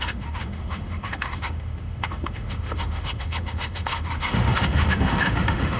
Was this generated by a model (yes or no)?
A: yes